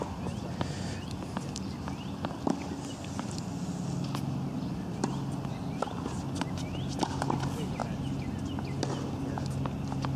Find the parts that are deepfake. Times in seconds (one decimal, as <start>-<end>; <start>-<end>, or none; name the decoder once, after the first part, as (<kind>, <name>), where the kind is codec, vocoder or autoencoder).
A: none